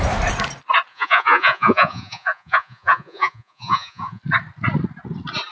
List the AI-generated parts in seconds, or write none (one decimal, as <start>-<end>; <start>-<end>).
0.9-4.2